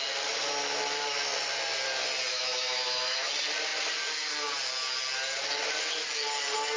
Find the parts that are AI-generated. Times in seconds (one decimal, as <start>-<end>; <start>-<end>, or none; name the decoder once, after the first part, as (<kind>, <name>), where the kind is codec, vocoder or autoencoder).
2.3-3.3 (autoencoder, DAC-VAE)